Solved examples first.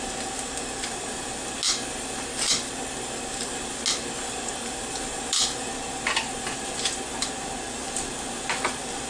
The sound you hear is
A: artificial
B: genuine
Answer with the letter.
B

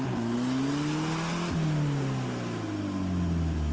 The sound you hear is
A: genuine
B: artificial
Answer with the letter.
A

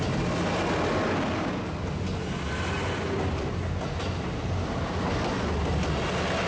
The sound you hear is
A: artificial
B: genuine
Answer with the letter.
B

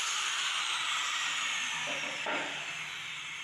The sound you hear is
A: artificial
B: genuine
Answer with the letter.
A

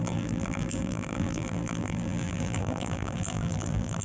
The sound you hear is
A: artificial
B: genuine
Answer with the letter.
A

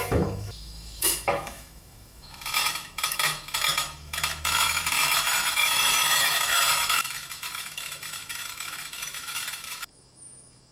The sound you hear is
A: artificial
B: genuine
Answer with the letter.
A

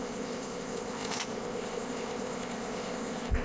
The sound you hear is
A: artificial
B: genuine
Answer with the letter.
A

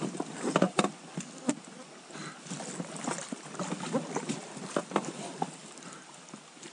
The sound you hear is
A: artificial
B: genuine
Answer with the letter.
B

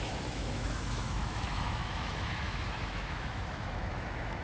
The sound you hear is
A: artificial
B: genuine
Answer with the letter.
A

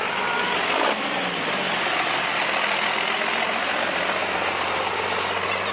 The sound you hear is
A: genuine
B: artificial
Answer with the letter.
A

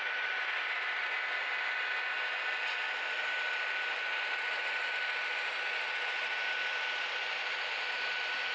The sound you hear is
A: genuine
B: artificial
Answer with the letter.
A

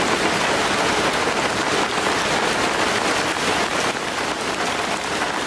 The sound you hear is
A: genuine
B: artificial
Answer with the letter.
A